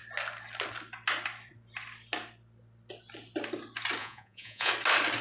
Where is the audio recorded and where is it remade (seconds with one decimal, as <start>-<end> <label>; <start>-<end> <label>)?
0.0-4.0 recorded; 4.0-4.7 remade; 4.7-5.2 recorded